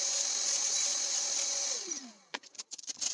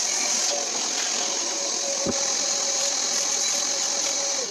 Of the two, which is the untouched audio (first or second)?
second